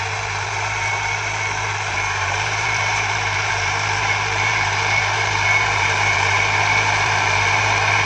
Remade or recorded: remade